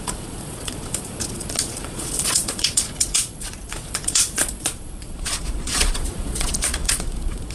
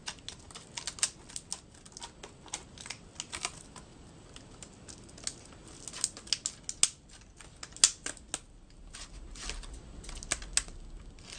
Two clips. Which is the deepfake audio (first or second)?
first